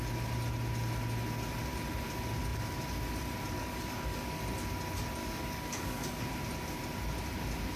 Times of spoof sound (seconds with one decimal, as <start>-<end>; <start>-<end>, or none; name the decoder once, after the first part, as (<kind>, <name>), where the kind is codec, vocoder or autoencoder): 3.6-4.4 (codec, DAC); 5.2-6.2